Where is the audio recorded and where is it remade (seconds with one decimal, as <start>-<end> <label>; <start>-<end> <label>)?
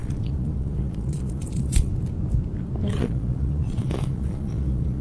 0.0-1.9 remade; 1.9-2.9 recorded; 2.9-5.0 remade